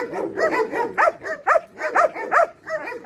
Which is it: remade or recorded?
remade